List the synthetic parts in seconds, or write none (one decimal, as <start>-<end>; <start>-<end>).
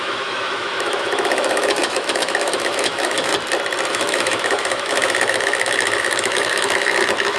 0.0-3.3; 3.9-7.4